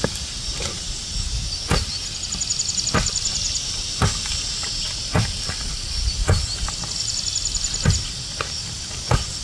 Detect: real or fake real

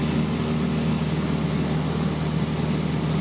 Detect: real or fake real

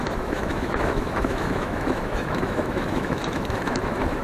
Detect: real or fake fake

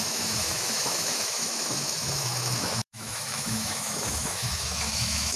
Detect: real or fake fake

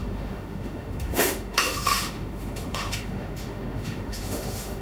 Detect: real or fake fake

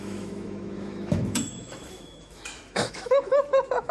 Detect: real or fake fake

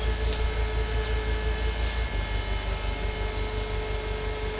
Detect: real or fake real